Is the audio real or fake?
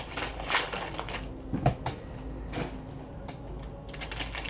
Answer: real